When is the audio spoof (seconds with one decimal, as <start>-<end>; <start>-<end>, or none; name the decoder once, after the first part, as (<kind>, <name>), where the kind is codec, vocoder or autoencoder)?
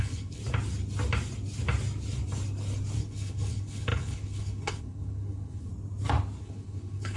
0.0-0.4 (codec, HILCodec); 3.0-5.7; 6.4-7.2